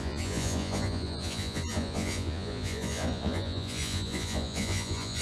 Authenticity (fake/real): fake